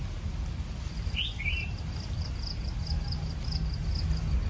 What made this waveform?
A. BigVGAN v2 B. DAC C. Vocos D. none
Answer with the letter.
D